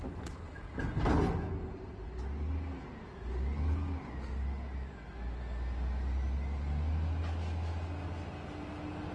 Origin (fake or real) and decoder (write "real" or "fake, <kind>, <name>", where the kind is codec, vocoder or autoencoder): real